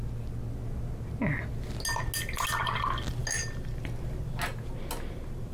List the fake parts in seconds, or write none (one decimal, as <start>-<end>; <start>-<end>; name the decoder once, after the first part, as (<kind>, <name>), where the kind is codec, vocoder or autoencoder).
none